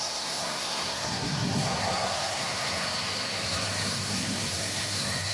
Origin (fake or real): fake